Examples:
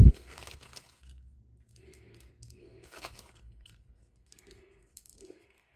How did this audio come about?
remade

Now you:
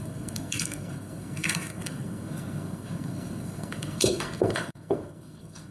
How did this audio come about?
remade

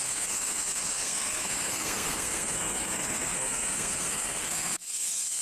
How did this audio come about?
remade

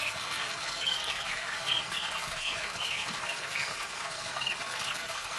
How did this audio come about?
remade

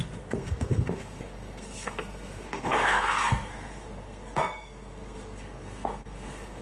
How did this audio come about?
remade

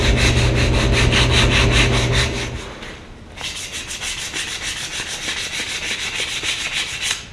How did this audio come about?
recorded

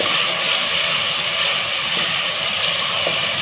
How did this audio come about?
recorded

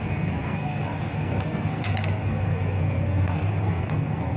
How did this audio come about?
remade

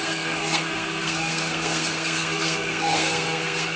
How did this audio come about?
remade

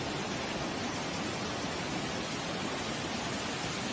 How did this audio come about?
recorded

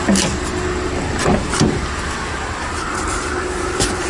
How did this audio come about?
recorded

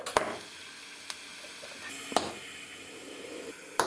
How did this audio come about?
recorded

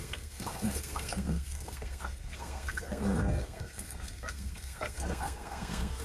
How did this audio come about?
remade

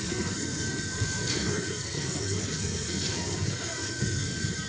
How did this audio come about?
remade